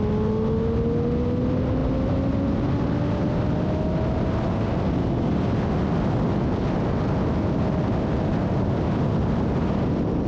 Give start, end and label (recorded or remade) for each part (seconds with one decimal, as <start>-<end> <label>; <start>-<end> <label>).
0.0-10.3 recorded